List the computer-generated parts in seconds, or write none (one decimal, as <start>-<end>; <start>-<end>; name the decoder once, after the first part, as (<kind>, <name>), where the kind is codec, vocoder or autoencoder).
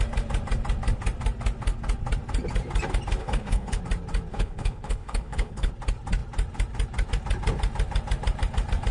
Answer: 3.2-3.8 (codec, HILCodec); 4.3-5.7